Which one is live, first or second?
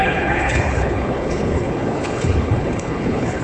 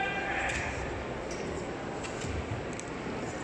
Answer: second